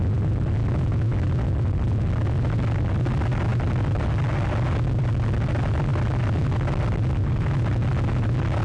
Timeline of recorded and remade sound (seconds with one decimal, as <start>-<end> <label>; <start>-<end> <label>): 0.0-8.6 recorded